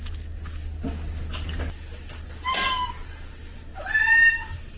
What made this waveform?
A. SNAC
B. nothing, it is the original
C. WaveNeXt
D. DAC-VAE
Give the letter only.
B